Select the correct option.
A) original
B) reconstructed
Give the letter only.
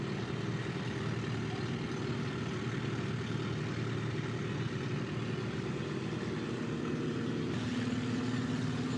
A